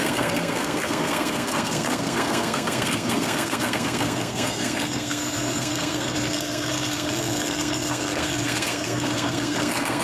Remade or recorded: remade